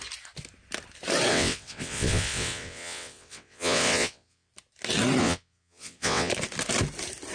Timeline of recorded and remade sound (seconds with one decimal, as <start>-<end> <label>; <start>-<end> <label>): 0.0-1.3 recorded; 1.3-4.5 remade; 4.5-5.2 recorded; 5.2-6.3 remade; 6.3-7.3 recorded